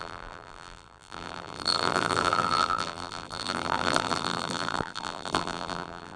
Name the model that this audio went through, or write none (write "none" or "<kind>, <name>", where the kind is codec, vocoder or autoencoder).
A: vocoder, BigVGAN v2